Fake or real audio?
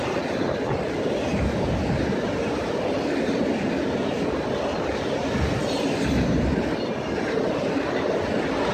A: real